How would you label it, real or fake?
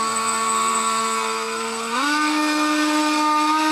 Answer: fake